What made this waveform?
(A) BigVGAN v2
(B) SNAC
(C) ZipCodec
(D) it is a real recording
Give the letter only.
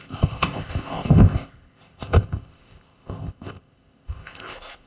C